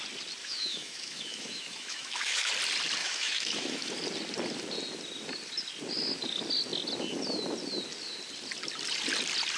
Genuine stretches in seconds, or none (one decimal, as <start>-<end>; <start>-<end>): 0.0-0.4; 2.5-3.0; 3.9-9.6